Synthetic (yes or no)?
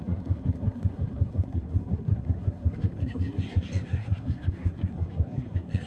yes